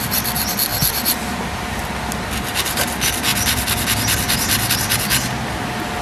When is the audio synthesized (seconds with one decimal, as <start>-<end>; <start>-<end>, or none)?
none

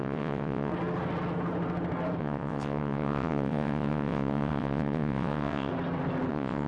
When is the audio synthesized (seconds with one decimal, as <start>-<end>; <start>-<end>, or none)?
0.0-0.7; 2.2-5.7; 6.3-6.7

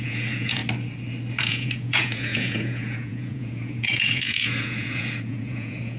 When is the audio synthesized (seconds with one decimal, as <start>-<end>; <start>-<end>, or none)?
0.0-0.6; 1.4-6.0

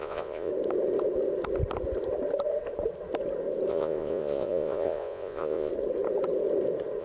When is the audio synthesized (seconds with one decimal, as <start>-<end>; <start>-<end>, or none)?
0.0-0.5; 3.7-5.7